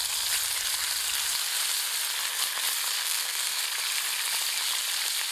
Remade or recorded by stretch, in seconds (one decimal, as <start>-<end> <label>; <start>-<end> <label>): 0.0-3.0 recorded; 3.0-3.6 remade; 3.6-5.3 recorded